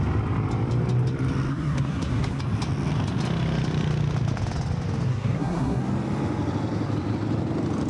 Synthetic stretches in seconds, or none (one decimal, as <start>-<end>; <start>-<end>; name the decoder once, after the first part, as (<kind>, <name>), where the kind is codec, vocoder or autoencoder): 1.5-2.4 (codec, SNAC); 5.1-5.8